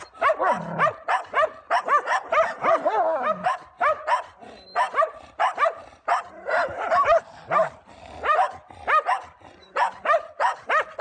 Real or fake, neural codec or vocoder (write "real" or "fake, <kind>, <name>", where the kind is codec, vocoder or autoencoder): real